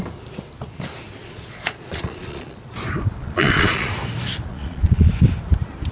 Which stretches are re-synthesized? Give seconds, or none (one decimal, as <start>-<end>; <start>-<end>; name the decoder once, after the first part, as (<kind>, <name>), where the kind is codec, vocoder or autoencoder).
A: 1.2-2.7 (vocoder, Vocos); 3.2-3.9; 4.5-5.1